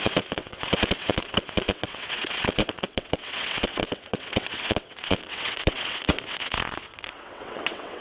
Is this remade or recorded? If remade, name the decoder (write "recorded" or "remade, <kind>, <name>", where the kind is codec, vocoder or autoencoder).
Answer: remade, vocoder, WaveNeXt